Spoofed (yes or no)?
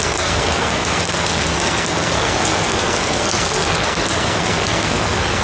yes